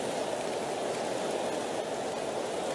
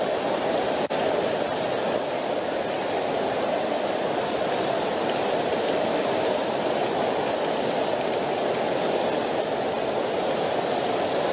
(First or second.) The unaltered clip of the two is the first